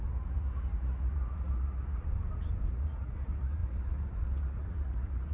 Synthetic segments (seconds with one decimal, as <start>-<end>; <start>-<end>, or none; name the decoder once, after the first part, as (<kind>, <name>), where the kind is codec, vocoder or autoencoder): 0.0-2.1 (vocoder, Vocos); 2.7-5.3